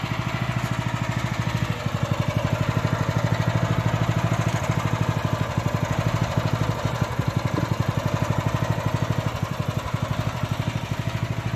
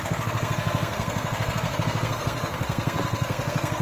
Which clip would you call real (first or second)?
first